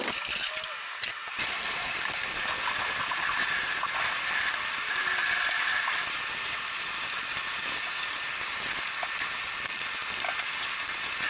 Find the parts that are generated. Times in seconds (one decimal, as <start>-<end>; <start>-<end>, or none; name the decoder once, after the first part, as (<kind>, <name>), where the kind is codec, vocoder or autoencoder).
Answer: none